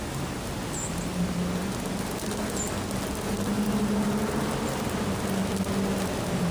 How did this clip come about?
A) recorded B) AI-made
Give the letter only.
A